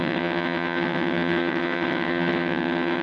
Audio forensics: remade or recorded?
remade